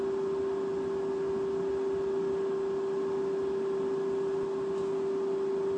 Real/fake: real